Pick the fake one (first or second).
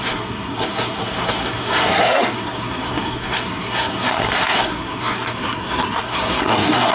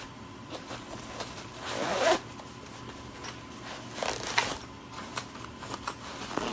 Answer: first